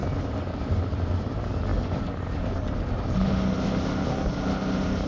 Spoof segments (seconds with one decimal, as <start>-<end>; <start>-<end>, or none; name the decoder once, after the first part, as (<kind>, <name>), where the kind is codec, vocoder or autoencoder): none